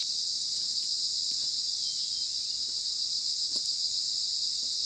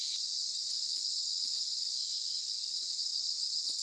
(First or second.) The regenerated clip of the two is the second